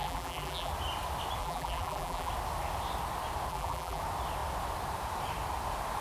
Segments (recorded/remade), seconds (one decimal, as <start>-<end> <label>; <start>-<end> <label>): 0.0-0.7 remade; 0.7-1.4 recorded; 1.4-2.3 remade; 2.3-3.5 recorded; 3.5-4.0 remade; 4.0-6.0 recorded